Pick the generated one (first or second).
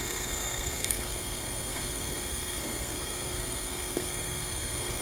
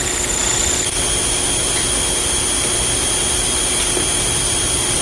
first